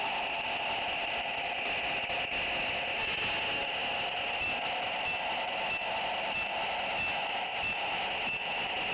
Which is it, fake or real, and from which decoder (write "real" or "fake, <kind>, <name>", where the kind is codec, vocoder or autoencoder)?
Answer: real